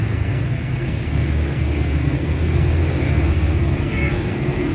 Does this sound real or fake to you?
fake